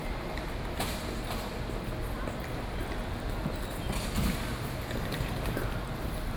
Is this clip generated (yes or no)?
no